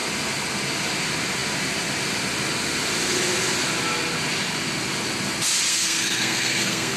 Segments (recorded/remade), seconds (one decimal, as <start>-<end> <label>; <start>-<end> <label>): 0.0-5.7 recorded; 5.7-7.0 remade